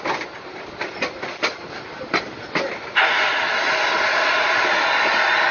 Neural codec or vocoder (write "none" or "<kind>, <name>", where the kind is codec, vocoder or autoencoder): none